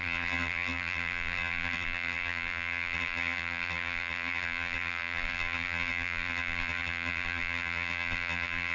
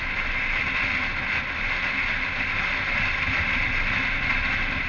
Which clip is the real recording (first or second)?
second